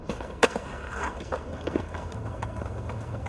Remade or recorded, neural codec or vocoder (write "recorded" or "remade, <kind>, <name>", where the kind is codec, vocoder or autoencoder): remade, codec, SNAC